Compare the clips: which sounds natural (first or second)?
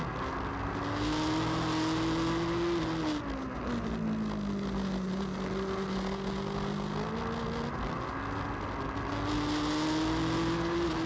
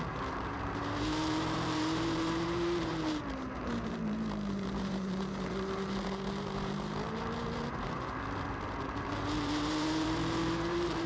first